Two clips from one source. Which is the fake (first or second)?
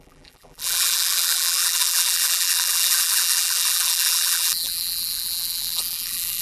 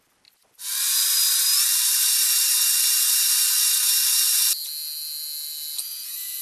first